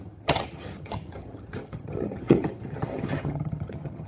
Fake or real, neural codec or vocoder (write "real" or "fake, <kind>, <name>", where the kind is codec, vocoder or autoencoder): fake, vocoder, HiFi-GAN